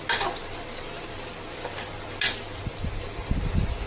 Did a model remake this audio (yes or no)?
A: no